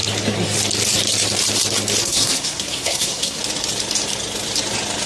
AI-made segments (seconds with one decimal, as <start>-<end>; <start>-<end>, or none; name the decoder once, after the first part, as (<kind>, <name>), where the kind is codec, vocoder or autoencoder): 2.0-3.4 (codec, SNAC)